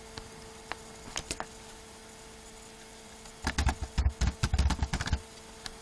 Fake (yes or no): no